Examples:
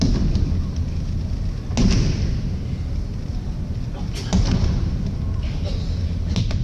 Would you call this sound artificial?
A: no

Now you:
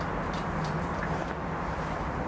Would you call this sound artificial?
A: no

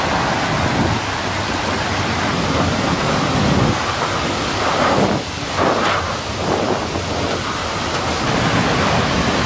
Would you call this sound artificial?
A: no